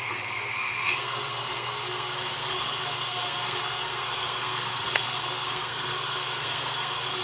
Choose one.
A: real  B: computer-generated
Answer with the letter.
B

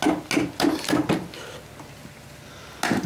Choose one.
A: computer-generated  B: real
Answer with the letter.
B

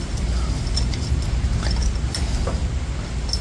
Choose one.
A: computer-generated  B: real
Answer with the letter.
B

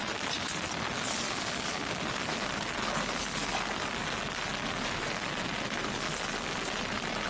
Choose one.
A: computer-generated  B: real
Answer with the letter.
B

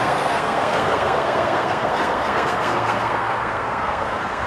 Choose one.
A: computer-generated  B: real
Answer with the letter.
A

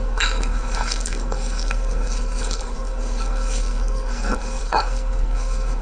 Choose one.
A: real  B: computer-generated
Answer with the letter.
B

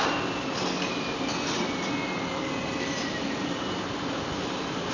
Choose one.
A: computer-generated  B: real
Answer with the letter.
B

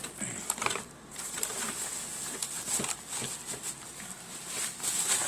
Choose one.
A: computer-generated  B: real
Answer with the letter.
B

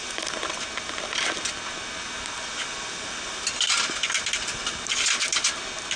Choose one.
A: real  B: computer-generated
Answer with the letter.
A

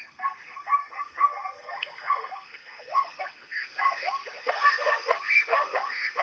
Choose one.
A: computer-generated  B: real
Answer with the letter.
A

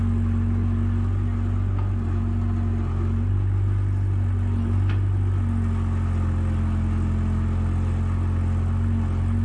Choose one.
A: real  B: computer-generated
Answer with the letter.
A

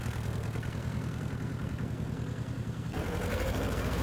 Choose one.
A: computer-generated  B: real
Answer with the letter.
A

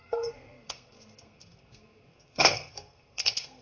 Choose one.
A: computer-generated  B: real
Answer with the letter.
A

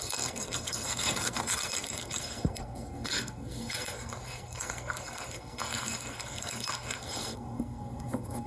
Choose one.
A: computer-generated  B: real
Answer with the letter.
A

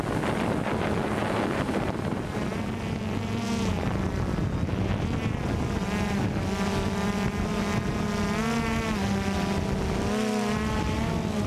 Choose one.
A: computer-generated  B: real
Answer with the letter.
B